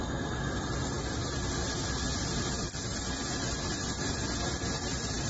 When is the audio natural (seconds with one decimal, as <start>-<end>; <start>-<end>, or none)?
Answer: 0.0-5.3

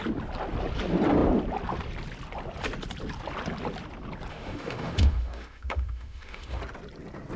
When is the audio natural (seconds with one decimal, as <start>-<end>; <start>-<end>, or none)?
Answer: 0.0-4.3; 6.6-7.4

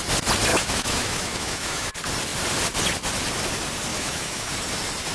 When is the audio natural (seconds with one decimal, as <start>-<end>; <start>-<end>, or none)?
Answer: 0.0-0.5; 1.9-3.9; 4.5-5.1

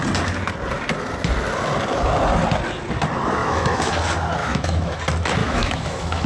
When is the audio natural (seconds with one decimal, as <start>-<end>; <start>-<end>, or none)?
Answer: 0.0-3.4; 3.9-4.4; 5.0-5.4

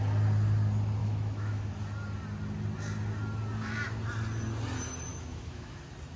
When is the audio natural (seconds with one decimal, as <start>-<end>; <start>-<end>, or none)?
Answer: 0.0-1.0; 1.7-5.1; 5.8-6.2

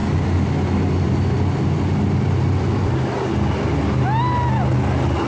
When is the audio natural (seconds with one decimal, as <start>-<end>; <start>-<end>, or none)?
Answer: 0.0-5.3

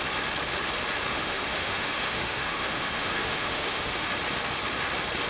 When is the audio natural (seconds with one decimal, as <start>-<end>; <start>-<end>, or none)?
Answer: 0.0-1.1; 4.1-5.3

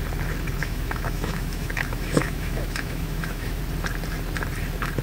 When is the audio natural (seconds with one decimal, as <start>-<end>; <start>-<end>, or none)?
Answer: 0.0-0.6; 3.6-5.0